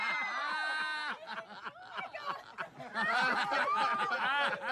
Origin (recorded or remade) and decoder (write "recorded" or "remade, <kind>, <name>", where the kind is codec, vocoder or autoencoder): recorded